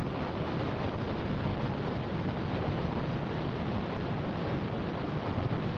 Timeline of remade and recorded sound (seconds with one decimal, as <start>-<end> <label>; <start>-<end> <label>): 0.0-5.8 recorded